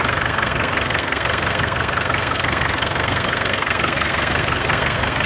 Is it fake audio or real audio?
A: fake